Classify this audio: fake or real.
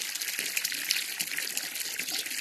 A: real